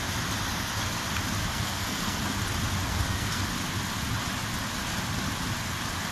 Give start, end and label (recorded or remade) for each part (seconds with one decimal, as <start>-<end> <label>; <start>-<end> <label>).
0.0-1.5 recorded; 1.5-2.2 remade; 2.2-2.9 recorded; 2.9-3.4 remade; 3.4-6.1 recorded